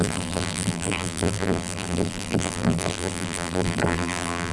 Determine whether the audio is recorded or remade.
remade